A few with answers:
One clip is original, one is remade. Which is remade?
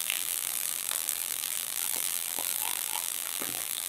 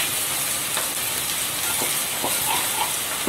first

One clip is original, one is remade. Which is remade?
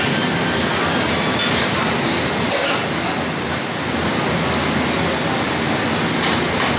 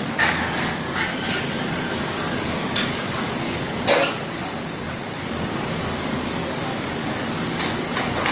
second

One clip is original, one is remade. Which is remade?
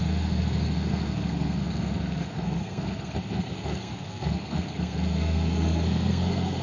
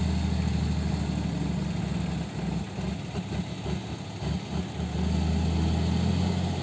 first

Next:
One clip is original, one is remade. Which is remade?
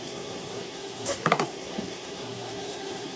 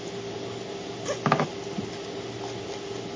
first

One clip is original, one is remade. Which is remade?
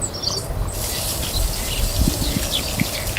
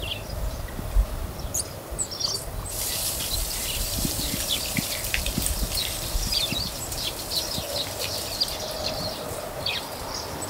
second